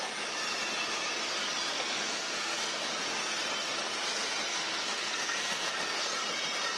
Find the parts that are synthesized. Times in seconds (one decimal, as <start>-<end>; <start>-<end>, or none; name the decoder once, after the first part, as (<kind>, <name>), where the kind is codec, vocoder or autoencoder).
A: 1.7-2.8 (codec, SNAC); 4.5-5.7